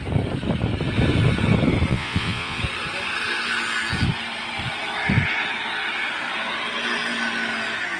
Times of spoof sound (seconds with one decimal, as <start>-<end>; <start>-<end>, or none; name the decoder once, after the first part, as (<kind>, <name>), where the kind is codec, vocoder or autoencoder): 1.9-2.6 (vocoder, Vocos)